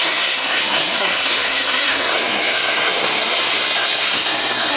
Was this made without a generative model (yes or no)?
no